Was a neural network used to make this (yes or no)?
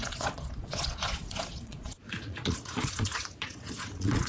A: yes